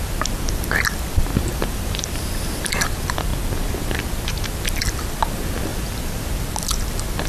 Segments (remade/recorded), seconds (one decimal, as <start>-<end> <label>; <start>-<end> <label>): 0.0-1.5 recorded; 1.5-2.9 remade; 2.9-5.7 recorded; 5.7-6.3 remade; 6.3-7.3 recorded